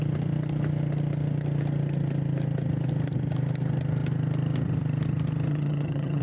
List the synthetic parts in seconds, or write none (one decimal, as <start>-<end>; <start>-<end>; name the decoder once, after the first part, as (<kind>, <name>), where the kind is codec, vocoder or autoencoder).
5.5-6.2 (vocoder, HiFi-GAN)